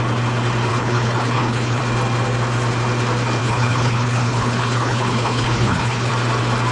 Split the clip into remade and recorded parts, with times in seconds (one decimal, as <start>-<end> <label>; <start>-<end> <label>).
0.0-0.7 recorded; 0.7-1.8 remade; 1.8-3.4 recorded; 3.4-6.1 remade; 6.1-6.7 recorded